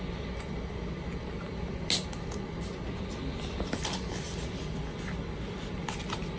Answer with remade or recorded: recorded